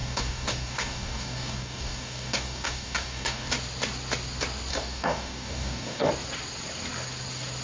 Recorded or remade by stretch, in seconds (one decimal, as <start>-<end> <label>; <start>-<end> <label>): 0.0-3.5 remade; 3.5-4.7 recorded; 4.7-6.1 remade; 6.1-7.6 recorded